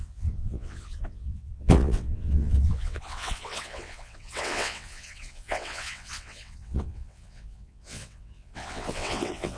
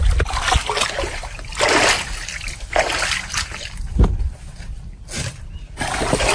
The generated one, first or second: first